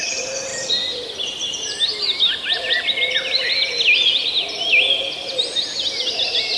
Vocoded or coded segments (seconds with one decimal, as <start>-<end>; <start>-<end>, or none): none